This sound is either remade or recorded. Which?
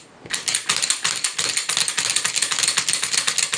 recorded